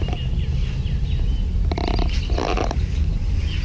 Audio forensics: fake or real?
real